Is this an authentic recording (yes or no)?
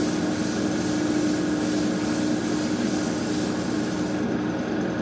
yes